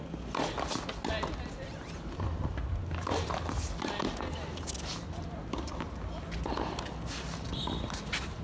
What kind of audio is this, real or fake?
real